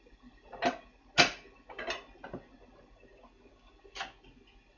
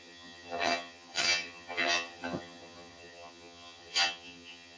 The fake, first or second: second